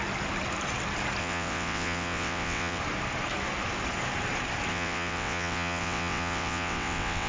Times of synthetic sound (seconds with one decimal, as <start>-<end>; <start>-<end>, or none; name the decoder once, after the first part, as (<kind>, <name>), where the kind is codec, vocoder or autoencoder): 1.2-2.8 (vocoder, WaveNeXt); 4.7-7.3